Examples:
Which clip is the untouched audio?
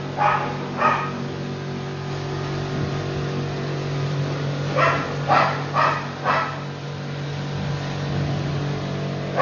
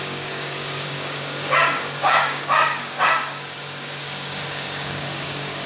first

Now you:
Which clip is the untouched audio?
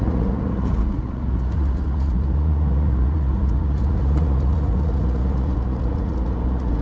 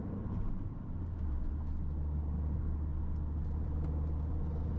second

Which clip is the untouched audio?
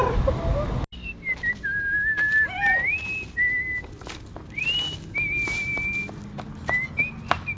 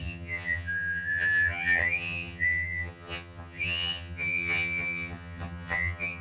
first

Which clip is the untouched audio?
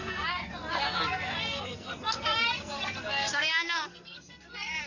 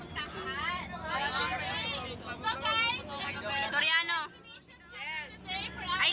second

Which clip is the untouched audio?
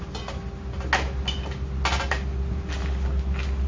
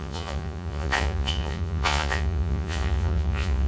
first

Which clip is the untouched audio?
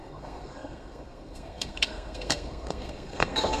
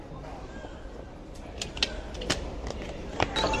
second